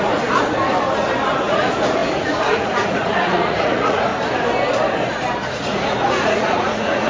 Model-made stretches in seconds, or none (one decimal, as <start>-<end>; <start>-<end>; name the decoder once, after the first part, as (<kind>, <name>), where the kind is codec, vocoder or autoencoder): 0.0-0.7 (vocoder, Vocos); 1.4-4.1; 5.5-7.1